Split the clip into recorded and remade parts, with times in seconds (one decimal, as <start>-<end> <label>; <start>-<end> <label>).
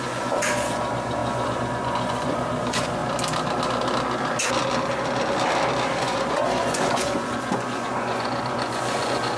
0.0-3.0 remade; 3.0-6.0 recorded; 6.0-9.4 remade